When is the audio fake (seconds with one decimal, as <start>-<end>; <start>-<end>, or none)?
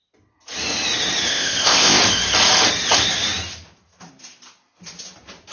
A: 1.3-2.0